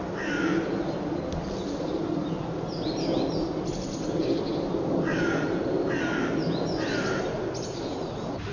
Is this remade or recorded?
recorded